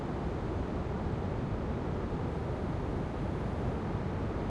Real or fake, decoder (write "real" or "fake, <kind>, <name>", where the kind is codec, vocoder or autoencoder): real